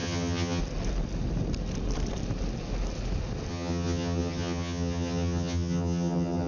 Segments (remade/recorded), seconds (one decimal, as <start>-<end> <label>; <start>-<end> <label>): 0.0-0.6 remade; 0.6-3.5 recorded; 3.5-6.5 remade